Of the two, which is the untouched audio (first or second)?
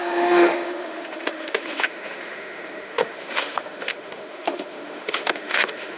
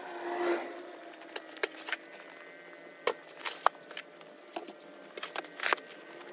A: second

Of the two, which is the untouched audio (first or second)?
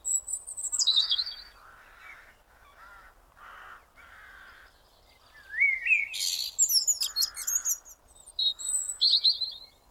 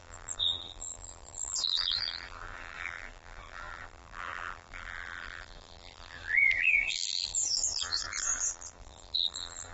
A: first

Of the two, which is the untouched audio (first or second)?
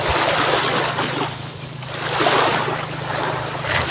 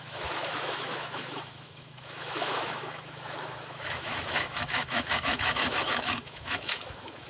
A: first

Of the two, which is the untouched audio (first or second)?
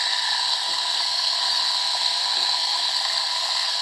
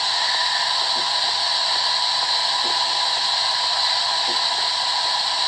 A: second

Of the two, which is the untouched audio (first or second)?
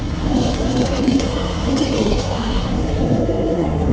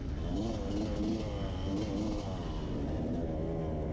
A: second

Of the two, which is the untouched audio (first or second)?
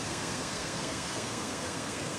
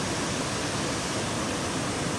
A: second